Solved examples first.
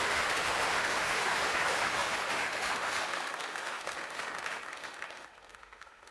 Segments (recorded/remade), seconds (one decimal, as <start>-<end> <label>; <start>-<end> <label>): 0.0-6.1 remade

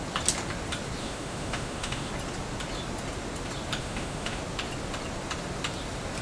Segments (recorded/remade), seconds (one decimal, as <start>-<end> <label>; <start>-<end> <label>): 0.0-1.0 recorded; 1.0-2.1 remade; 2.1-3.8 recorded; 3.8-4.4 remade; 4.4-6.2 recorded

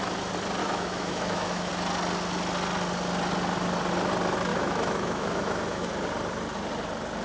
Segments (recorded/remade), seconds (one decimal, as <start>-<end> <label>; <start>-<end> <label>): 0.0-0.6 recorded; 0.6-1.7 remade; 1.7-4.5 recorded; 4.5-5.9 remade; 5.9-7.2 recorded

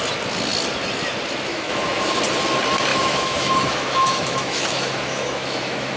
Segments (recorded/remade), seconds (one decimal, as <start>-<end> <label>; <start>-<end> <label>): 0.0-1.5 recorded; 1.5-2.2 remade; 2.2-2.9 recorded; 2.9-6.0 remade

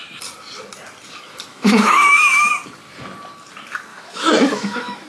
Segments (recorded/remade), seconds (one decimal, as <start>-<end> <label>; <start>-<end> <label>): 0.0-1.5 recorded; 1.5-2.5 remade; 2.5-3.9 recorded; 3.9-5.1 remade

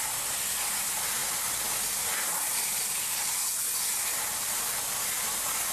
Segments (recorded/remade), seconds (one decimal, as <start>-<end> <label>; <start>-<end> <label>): 0.0-5.7 recorded